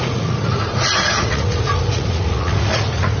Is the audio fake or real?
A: fake